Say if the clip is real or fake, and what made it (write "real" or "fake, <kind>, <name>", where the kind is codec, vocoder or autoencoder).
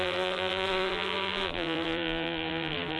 fake, vocoder, BigVGAN v2